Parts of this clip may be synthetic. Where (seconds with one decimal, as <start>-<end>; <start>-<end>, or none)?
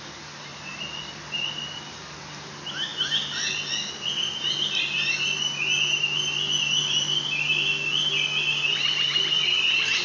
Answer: none